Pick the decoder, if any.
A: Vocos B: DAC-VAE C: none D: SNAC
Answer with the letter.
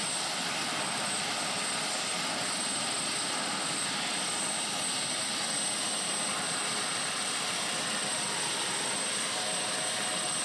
C